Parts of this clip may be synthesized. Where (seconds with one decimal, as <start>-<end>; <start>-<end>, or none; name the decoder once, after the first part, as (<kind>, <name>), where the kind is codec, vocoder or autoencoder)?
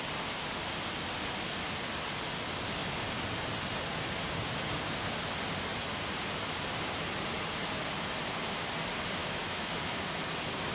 9.2-10.2 (autoencoder, DAC-VAE)